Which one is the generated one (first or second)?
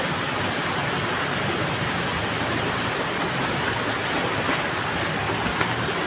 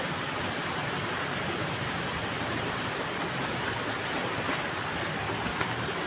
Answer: second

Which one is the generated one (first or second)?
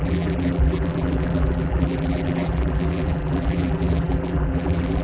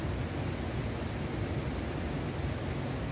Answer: first